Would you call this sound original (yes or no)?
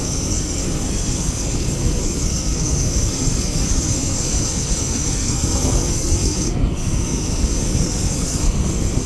no